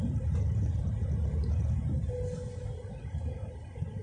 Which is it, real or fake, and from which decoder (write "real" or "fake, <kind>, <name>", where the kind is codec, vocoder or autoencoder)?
real